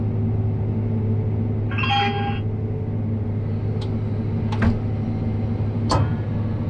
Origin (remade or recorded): recorded